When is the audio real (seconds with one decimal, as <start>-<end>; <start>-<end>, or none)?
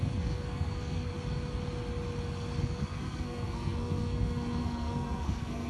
1.1-2.6